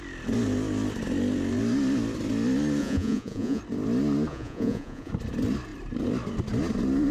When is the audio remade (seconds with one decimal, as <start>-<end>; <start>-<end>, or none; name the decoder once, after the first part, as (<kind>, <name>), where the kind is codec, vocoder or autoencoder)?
2.8-3.6 (vocoder, Vocos); 4.3-5.1